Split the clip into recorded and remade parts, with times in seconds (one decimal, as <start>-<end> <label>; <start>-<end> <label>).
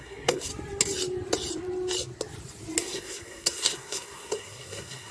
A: 0.0-0.5 remade; 0.5-2.8 recorded; 2.8-5.1 remade